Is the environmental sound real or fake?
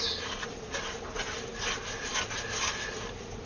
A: real